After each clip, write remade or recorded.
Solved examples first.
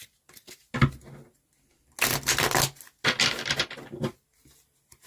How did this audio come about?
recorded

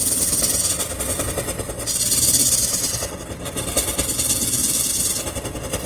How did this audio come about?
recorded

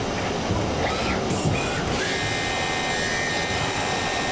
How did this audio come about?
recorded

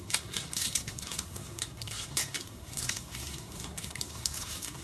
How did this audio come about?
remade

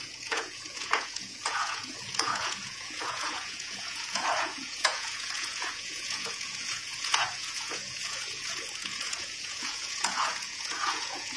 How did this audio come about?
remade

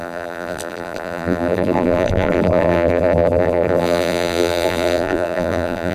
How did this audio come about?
remade